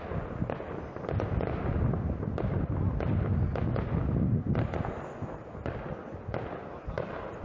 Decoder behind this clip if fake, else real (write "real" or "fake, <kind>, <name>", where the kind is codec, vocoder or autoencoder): real